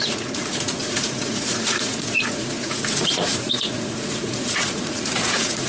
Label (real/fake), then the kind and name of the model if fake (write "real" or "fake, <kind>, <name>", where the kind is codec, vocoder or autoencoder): fake, vocoder, Vocos